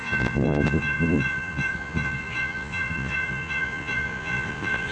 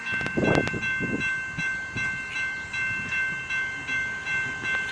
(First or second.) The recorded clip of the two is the second